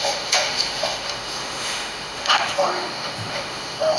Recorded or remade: remade